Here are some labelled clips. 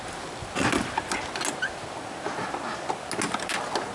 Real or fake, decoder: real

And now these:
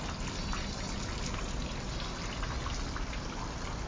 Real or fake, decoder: real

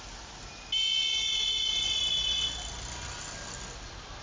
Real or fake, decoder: real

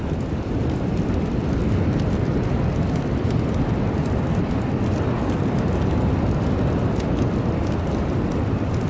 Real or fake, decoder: real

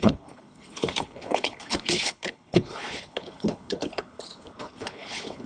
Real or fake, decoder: fake, codec, HILCodec